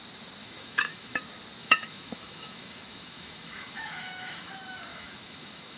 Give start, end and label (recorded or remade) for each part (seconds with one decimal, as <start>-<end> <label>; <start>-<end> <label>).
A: 0.0-0.4 recorded; 0.4-1.2 remade; 1.2-1.6 recorded; 1.6-4.5 remade; 4.5-4.9 recorded; 4.9-5.8 remade